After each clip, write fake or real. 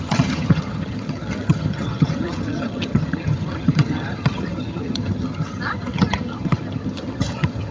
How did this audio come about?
fake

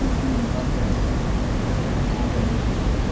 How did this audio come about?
real